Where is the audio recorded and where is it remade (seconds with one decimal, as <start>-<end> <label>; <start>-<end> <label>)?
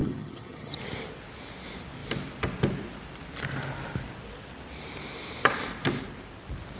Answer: 0.0-0.8 remade; 0.8-6.8 recorded